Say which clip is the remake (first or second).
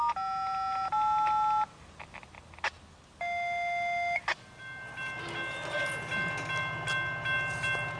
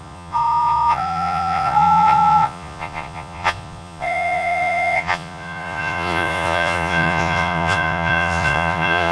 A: second